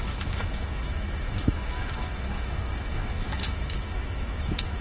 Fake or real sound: fake